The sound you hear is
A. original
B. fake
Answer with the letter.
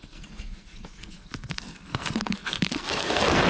B